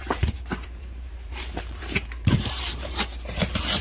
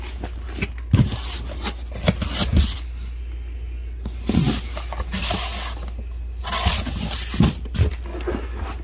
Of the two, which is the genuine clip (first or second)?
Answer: second